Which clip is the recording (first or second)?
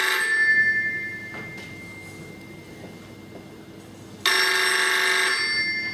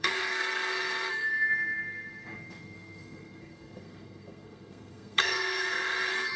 first